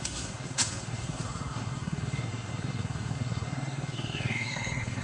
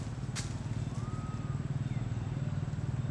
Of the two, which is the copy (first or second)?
first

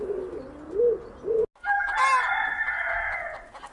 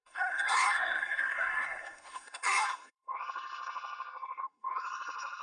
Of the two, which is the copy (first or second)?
second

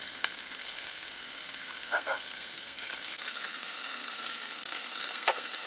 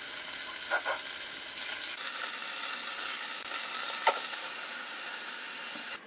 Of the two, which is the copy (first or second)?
first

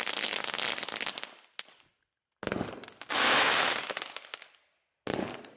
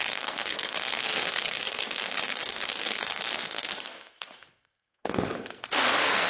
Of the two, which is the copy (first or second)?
second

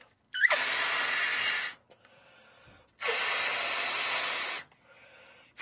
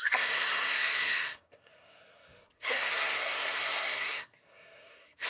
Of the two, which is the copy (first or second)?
second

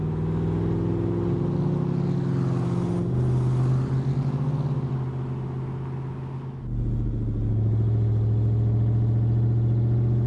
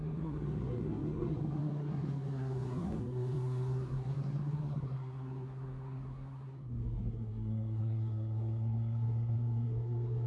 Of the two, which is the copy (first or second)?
second